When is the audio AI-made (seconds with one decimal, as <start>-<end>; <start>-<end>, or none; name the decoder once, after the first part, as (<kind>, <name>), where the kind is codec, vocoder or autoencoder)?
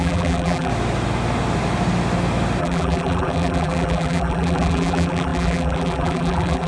0.0-0.7 (vocoder, BigVGAN v2); 2.6-6.7